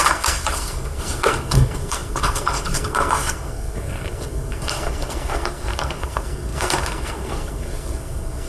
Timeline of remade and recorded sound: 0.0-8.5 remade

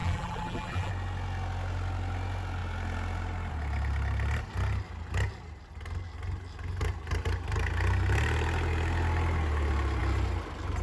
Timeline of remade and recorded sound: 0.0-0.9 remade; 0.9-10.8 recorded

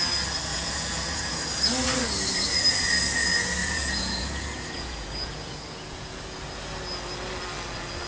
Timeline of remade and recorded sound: 0.0-0.5 recorded; 0.5-1.4 remade; 1.4-3.6 recorded; 3.6-6.2 remade; 6.2-8.1 recorded

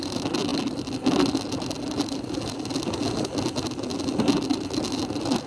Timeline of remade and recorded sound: 0.0-5.5 recorded

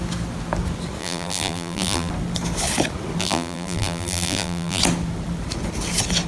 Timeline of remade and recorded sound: 0.0-1.0 recorded; 1.0-2.1 remade; 2.1-3.2 recorded; 3.2-4.8 remade; 4.8-6.3 recorded